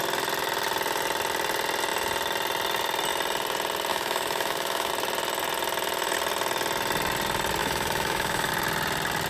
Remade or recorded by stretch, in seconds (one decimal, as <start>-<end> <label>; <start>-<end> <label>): 0.0-3.9 recorded; 3.9-4.9 remade; 4.9-7.6 recorded; 7.6-8.5 remade; 8.5-9.3 recorded

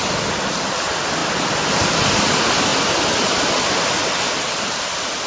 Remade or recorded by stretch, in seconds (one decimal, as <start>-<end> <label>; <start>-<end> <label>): 0.0-5.3 recorded

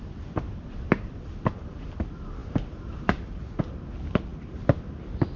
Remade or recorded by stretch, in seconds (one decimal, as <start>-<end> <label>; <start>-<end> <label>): 0.0-5.4 recorded

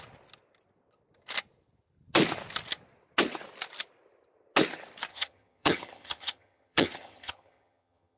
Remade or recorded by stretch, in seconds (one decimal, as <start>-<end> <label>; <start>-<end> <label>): 0.0-5.1 recorded; 5.1-8.2 remade

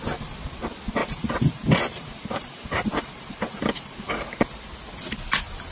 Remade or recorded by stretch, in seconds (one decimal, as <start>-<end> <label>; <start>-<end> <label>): 0.0-1.0 recorded; 1.0-4.4 remade; 4.4-5.7 recorded